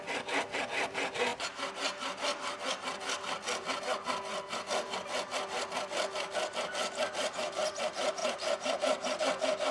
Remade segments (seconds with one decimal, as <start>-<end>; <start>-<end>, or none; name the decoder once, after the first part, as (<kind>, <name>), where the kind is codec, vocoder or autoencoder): none